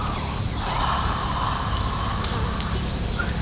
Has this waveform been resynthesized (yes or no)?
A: no